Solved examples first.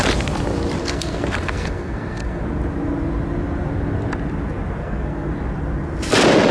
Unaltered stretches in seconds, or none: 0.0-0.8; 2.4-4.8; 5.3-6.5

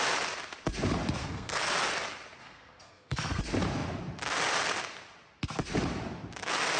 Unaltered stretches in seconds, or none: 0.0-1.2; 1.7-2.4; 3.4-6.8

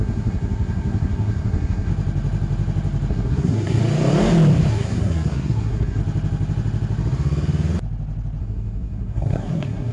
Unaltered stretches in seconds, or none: 1.9-3.1; 3.8-4.7; 6.0-8.4

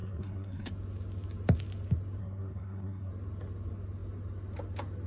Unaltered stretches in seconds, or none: 0.7-2.2; 3.1-5.1